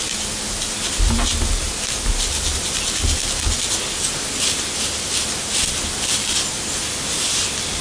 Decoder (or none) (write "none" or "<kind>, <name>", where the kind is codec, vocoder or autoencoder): none